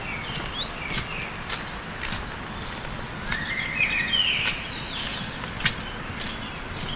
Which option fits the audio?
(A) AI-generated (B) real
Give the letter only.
B